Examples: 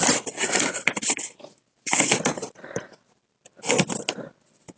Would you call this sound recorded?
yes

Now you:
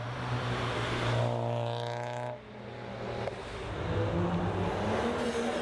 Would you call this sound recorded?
yes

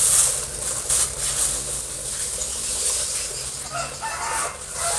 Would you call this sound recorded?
yes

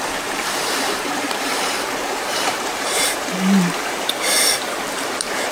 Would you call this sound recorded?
no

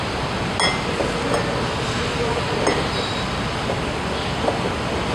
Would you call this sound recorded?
yes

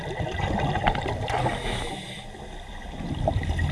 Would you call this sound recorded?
yes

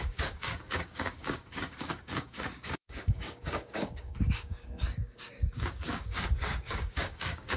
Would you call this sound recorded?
no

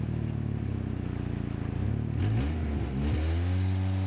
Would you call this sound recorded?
yes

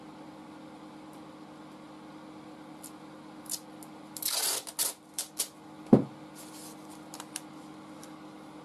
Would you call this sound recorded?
yes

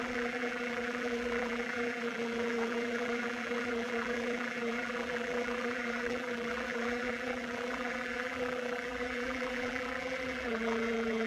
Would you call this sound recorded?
no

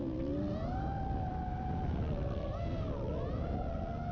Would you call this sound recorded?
yes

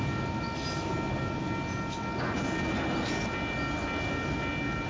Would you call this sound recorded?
yes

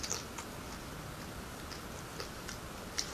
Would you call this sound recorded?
yes